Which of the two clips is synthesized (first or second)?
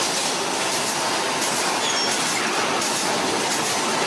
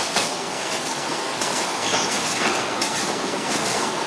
second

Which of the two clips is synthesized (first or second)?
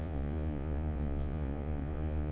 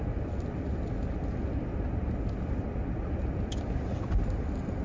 first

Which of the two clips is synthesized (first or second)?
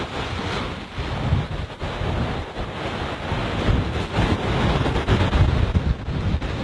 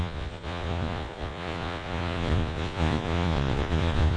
second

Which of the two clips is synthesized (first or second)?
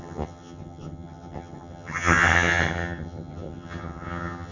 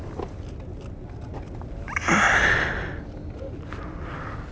first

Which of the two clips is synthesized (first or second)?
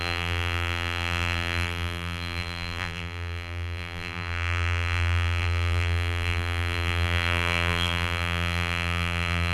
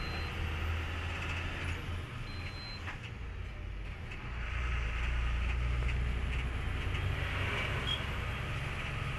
first